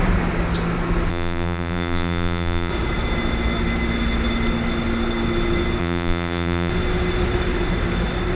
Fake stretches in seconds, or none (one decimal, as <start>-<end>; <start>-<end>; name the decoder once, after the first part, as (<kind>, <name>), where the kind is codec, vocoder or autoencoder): 1.1-2.7 (vocoder, BigVGAN v2); 5.8-6.7